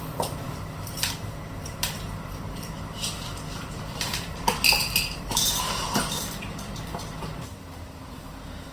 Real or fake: fake